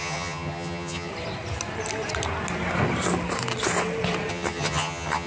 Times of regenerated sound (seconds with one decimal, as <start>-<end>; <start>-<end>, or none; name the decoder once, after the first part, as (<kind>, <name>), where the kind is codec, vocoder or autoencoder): 0.0-1.1 (vocoder, HiFi-GAN); 4.3-5.3